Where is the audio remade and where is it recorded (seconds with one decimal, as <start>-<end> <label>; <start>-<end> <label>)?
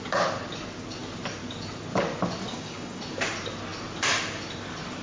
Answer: 0.0-2.5 recorded; 2.5-3.0 remade; 3.0-5.0 recorded